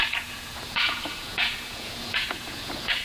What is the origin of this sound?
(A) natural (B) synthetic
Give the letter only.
B